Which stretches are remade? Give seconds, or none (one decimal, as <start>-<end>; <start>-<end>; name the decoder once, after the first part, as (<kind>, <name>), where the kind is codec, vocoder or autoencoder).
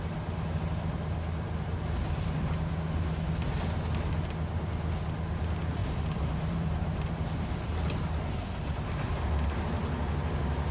5.8-7.1 (vocoder, BigVGAN v2)